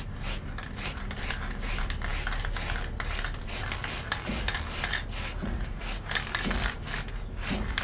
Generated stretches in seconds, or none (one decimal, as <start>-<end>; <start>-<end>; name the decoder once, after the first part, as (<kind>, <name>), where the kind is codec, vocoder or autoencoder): none